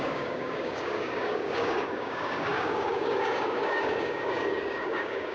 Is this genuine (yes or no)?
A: no